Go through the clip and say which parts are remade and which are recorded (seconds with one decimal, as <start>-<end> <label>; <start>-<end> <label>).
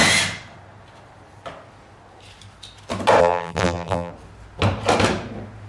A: 0.0-3.2 recorded; 3.2-4.1 remade; 4.1-5.7 recorded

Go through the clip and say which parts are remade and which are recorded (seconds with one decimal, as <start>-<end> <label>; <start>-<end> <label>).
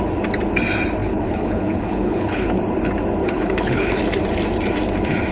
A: 0.0-1.0 recorded; 1.0-2.6 remade; 2.6-3.2 recorded; 3.2-4.0 remade; 4.0-5.3 recorded